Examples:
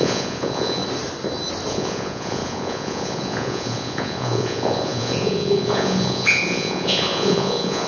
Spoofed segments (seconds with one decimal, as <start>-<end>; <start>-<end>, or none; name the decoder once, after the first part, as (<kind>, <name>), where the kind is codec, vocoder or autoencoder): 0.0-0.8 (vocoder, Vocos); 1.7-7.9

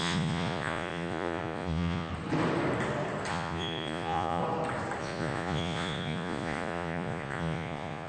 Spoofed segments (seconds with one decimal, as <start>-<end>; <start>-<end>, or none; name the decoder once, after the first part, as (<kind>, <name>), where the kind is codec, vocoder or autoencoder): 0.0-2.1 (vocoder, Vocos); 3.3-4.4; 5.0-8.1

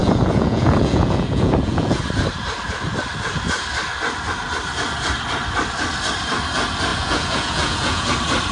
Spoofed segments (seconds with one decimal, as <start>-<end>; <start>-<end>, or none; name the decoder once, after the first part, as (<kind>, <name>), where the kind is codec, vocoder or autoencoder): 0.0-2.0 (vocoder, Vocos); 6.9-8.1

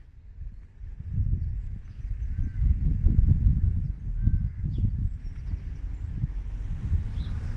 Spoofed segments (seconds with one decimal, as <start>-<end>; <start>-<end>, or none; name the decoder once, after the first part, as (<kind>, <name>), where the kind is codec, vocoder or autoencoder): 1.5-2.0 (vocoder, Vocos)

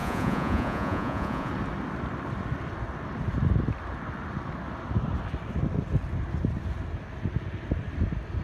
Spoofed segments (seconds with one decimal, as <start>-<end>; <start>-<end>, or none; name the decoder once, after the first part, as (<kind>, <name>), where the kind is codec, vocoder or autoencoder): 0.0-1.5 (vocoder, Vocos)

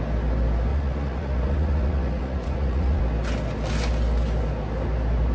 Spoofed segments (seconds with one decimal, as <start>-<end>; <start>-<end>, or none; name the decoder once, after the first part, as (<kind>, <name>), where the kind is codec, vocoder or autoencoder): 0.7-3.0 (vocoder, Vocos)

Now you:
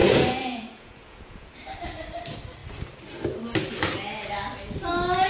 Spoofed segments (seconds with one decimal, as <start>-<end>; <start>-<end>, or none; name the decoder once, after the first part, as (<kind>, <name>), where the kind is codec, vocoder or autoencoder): 0.0-1.5 (vocoder, Vocos)